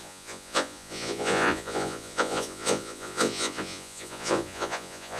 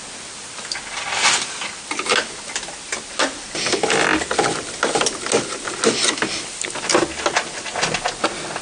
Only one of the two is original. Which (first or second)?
second